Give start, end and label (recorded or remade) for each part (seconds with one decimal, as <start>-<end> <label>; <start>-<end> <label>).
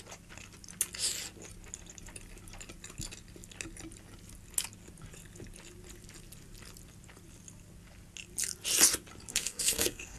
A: 0.0-9.3 recorded; 9.3-10.2 remade